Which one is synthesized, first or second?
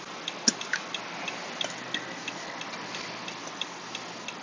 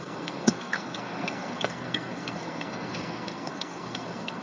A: second